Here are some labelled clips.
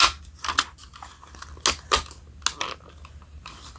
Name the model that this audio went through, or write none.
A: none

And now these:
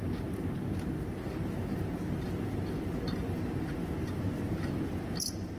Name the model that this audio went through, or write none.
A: none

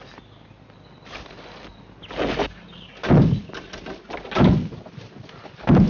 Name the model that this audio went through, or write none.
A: none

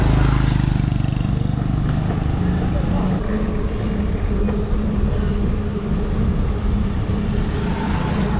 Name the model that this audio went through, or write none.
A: none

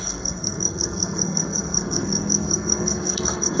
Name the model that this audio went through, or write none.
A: codec, SNAC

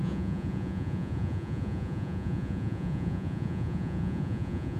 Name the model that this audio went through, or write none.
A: vocoder, Vocos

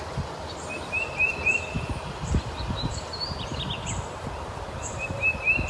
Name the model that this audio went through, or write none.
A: vocoder, BigVGAN v2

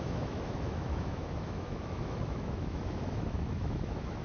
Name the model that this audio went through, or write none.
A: autoencoder, DAC-VAE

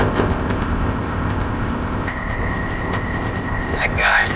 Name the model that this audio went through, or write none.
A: codec, ZipCodec